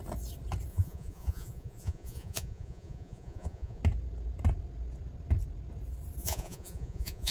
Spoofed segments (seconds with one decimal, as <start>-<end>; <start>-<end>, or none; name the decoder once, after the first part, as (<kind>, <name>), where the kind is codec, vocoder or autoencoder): 0.7-3.8 (vocoder, Vocos); 6.2-7.3